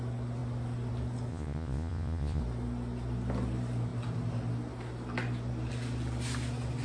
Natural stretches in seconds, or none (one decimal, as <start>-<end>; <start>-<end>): 0.0-1.3; 2.4-6.8